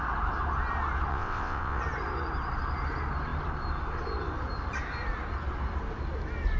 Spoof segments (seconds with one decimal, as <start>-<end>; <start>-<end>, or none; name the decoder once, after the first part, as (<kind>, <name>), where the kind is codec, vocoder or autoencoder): 1.1-1.8 (vocoder, WaveNeXt)

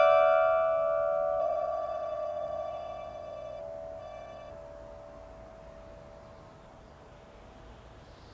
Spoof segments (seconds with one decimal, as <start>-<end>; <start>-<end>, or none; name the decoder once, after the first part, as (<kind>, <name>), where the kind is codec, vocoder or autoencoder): 1.4-3.6 (vocoder, WaveNeXt); 4.0-4.5